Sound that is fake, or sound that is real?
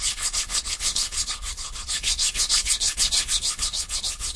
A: fake